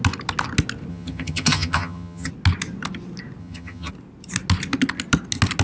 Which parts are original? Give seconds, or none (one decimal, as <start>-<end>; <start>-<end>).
0.0-0.9; 2.3-3.4; 3.9-5.6